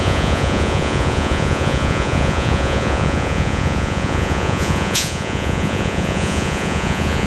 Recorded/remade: remade